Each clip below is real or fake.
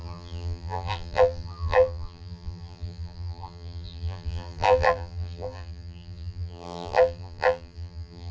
fake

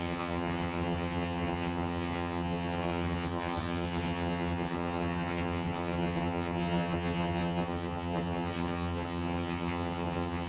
fake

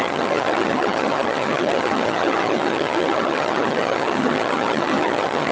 fake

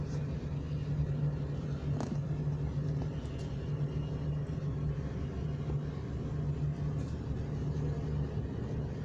real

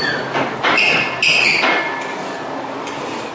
real